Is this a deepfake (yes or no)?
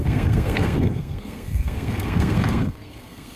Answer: yes